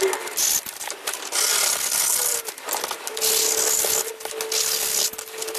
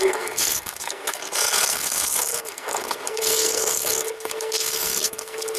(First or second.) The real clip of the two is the first